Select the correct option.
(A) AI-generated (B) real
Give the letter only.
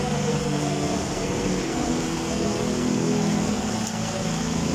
A